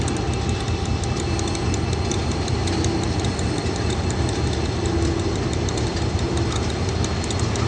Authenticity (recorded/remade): recorded